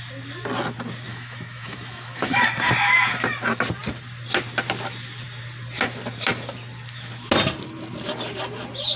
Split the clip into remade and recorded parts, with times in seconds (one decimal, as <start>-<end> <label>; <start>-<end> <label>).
0.0-1.1 recorded; 1.1-2.4 remade; 2.4-9.0 recorded